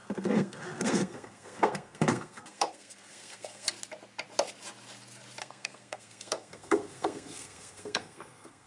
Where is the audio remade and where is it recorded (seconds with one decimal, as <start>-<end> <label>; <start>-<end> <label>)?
0.0-3.7 remade; 3.7-5.4 recorded; 5.4-8.7 remade